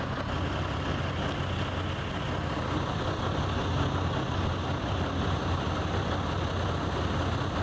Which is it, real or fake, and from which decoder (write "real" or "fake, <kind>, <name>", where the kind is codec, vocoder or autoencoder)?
real